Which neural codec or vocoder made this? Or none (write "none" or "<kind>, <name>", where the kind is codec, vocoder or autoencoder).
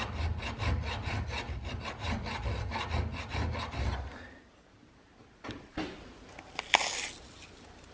none